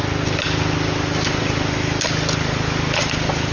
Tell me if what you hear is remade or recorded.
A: recorded